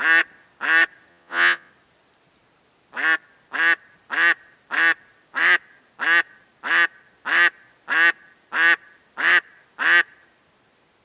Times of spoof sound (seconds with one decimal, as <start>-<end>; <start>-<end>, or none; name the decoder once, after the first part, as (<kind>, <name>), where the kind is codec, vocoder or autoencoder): 1.1-1.7 (vocoder, Vocos)